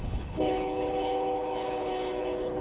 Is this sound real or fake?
fake